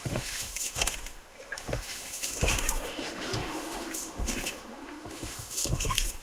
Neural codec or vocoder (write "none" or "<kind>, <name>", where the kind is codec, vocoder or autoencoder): autoencoder, DAC-VAE